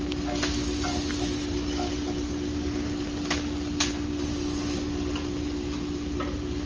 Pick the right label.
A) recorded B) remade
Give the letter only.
A